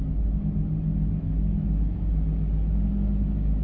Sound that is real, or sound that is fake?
real